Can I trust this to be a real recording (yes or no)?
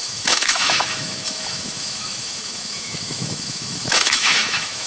no